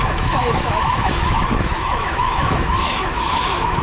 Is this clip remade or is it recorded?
remade